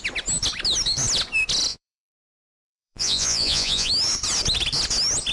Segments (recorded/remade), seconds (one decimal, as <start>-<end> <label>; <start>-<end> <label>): 0.0-1.7 recorded; 1.7-3.9 remade; 3.9-5.3 recorded